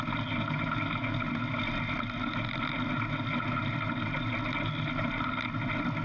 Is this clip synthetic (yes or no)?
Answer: no